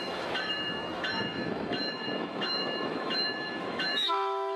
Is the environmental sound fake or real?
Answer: fake